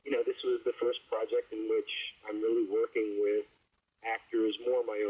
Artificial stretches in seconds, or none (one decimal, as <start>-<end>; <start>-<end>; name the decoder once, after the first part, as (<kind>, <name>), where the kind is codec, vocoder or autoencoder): 0.0-1.2 (vocoder, Vocos)